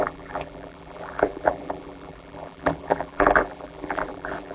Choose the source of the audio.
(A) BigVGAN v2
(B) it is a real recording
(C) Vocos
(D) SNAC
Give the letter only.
A